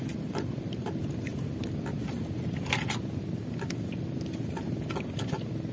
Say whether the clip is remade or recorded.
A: recorded